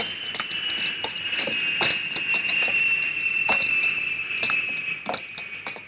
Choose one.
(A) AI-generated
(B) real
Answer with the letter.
B